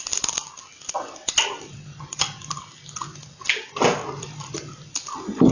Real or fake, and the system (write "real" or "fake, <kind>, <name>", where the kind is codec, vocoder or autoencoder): real